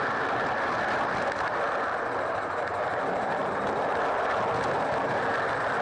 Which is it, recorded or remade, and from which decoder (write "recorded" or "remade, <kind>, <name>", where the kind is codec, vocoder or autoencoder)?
recorded